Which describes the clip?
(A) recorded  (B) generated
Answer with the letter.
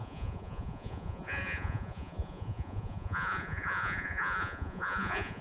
B